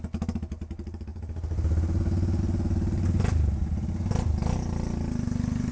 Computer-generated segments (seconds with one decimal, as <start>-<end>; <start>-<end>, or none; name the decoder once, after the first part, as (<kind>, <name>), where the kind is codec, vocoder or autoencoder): none